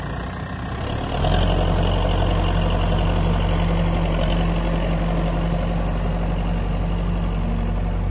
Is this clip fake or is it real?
real